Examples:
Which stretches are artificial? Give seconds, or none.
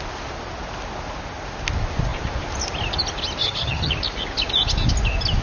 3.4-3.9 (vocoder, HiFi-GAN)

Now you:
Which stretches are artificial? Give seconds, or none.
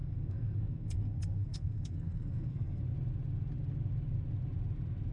0.0-2.8 (codec, SNAC)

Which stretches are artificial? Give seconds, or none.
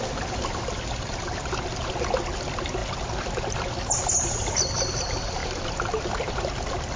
none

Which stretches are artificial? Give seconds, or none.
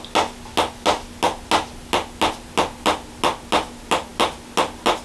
none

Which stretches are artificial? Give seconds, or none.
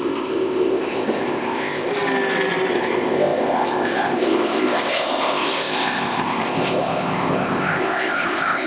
0.0-1.9 (codec, ZipCodec); 2.7-8.7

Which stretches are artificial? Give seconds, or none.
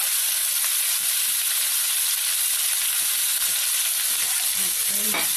0.0-5.4 (vocoder, BigVGAN v2)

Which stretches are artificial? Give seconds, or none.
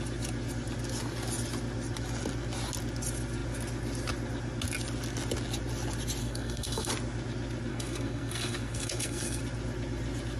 6.2-6.9 (codec, SNAC); 7.7-9.4